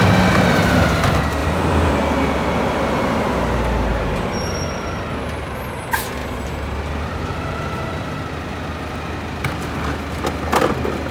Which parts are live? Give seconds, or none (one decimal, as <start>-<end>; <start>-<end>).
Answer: 0.0-1.4; 1.9-3.9; 5.5-6.2; 8.9-11.1